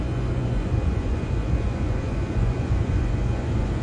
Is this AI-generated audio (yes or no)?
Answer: yes